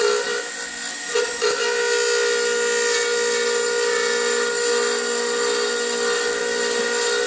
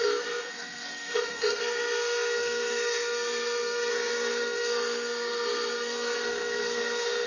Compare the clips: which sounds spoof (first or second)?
second